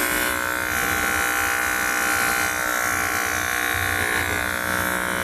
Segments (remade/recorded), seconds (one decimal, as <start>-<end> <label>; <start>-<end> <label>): 0.0-5.2 recorded